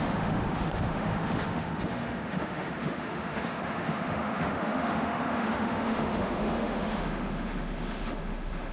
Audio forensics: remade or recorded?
remade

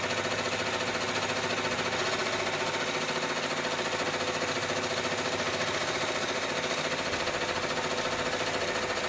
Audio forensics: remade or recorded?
recorded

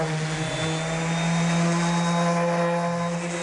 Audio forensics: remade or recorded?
recorded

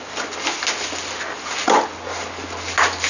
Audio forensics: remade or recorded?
recorded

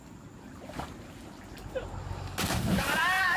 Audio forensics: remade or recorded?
recorded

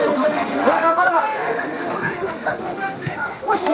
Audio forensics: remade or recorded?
remade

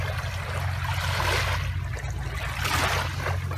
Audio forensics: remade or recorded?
recorded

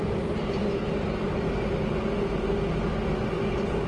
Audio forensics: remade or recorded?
recorded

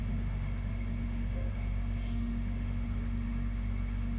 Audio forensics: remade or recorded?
remade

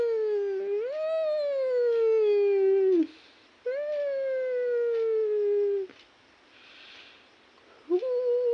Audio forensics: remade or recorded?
recorded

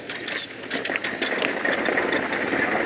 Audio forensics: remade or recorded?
recorded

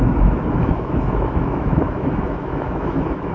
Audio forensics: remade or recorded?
remade